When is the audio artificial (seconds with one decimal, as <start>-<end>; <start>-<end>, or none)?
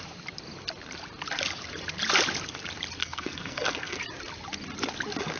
3.0-4.0